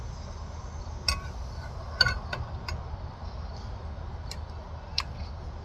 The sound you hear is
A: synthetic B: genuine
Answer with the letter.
B